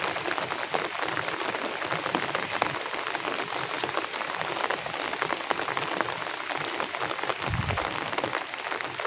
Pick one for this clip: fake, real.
real